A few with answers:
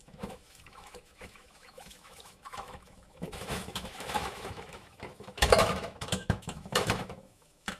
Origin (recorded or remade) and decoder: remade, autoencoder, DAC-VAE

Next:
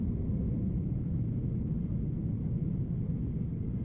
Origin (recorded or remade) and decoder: recorded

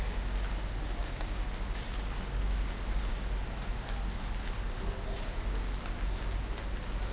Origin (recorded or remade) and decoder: recorded